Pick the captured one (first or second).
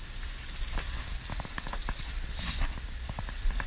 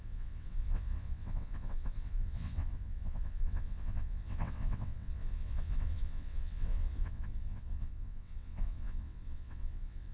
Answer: first